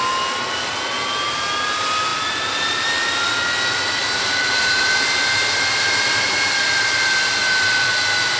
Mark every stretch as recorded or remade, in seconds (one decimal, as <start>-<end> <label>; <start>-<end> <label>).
0.0-2.1 recorded; 2.1-2.9 remade; 2.9-4.0 recorded; 4.0-4.8 remade; 4.8-8.4 recorded